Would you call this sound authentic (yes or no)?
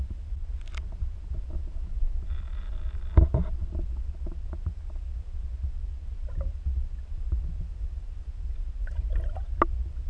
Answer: yes